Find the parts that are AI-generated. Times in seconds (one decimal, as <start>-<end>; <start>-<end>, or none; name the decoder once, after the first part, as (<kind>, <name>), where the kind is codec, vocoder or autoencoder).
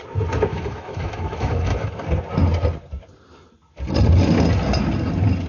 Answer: 0.5-1.9 (autoencoder, DAC-VAE)